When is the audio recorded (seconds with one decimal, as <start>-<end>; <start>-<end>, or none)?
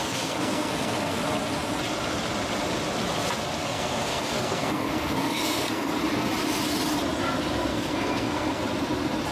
1.2-3.6; 6.0-7.7; 8.6-9.3